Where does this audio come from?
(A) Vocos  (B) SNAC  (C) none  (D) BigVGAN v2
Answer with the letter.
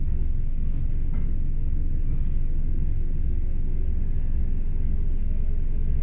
C